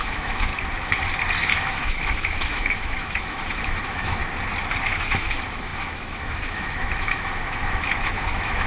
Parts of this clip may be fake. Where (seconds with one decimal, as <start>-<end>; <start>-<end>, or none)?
0.0-0.5; 1.4-4.2; 4.9-8.7

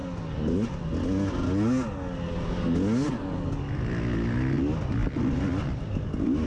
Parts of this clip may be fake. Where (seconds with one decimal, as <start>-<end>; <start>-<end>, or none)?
none

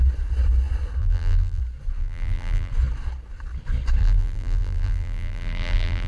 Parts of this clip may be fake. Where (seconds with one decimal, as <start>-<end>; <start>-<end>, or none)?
1.0-1.6; 2.0-2.7; 4.0-6.1

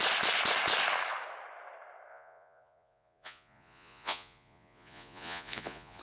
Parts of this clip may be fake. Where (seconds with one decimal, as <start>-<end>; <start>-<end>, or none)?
2.1-6.0